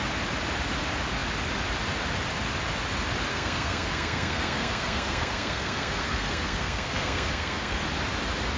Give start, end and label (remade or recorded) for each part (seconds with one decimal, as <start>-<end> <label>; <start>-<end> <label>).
0.0-3.3 recorded; 3.3-7.8 remade; 7.8-8.6 recorded